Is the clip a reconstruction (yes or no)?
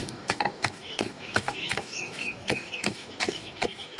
yes